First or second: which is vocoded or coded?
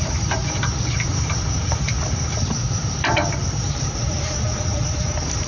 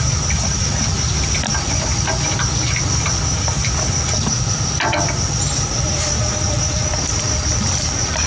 first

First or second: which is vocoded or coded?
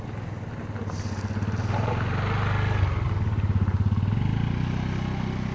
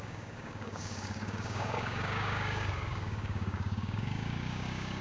second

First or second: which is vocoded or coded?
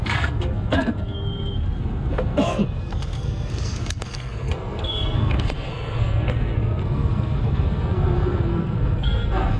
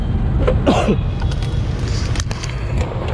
first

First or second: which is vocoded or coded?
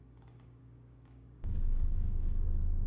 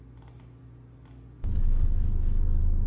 first